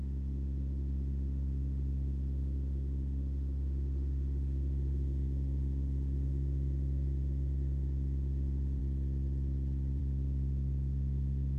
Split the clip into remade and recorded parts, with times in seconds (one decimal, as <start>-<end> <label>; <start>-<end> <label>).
0.0-8.8 remade; 8.8-10.0 recorded; 10.0-11.6 remade